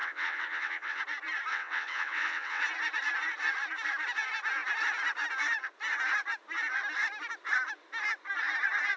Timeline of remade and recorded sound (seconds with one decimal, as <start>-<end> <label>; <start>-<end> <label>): 0.0-1.0 remade; 1.0-1.5 recorded; 1.5-2.6 remade; 2.6-9.0 recorded

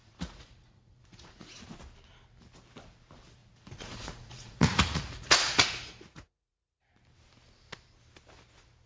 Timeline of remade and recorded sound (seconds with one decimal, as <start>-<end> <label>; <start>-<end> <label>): 0.0-1.6 remade; 1.6-3.4 recorded; 3.4-6.9 remade; 6.9-8.9 recorded

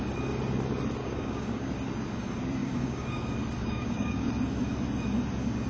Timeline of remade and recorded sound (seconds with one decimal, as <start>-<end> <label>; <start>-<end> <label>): 0.0-1.0 recorded; 1.0-1.7 remade; 1.7-2.6 recorded; 2.6-3.2 remade; 3.2-3.6 recorded; 3.6-4.3 remade; 4.3-5.7 recorded

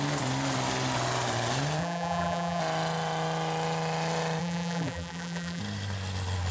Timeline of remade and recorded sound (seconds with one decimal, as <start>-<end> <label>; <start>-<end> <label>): 0.0-1.8 recorded; 1.8-2.6 remade; 2.6-4.4 recorded; 4.4-5.6 remade; 5.6-6.5 recorded